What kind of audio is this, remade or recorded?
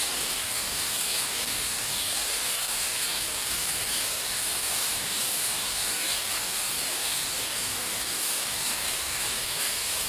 remade